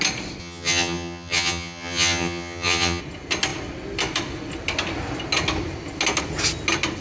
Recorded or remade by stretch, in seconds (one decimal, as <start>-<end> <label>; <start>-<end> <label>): 0.0-0.4 recorded; 0.4-3.0 remade; 3.0-7.0 recorded